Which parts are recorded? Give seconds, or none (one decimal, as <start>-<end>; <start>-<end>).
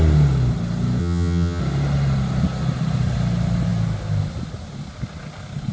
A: 0.0-1.0; 1.6-5.7